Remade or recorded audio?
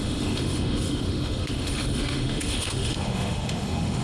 remade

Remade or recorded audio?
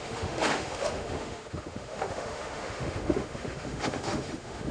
remade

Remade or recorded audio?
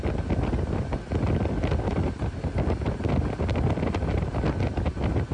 recorded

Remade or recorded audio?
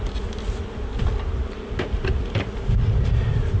recorded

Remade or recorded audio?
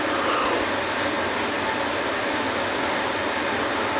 recorded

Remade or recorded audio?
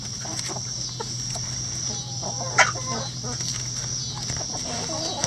recorded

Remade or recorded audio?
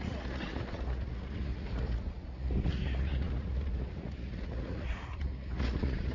remade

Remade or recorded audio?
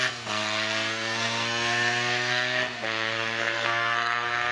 remade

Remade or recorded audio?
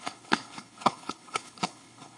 remade